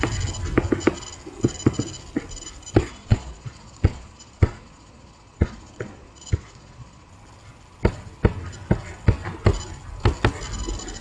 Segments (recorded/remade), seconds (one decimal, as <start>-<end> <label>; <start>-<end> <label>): 0.0-2.9 recorded; 2.9-7.1 remade; 7.1-11.0 recorded